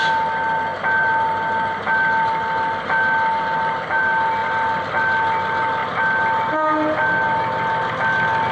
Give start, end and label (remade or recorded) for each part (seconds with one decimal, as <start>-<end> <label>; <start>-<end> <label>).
0.0-8.5 recorded